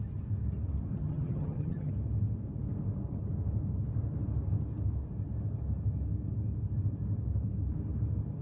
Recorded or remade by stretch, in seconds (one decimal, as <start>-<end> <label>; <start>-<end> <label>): 0.0-0.9 recorded; 0.9-1.9 remade; 1.9-8.4 recorded